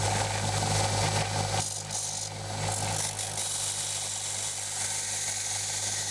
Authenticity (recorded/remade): recorded